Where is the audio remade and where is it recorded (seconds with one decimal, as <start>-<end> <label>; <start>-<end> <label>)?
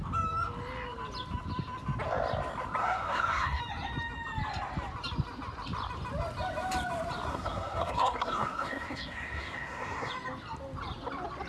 0.0-2.8 recorded; 2.8-3.6 remade; 3.6-7.3 recorded; 7.3-10.1 remade; 10.1-11.5 recorded